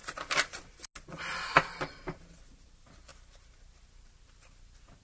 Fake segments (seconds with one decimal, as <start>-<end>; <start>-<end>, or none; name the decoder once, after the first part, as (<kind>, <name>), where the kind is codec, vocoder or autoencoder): 0.0-0.6 (vocoder, BigVGAN v2)